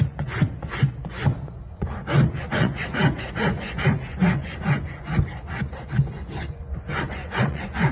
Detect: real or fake fake